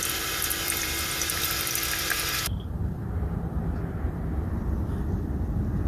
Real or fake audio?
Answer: fake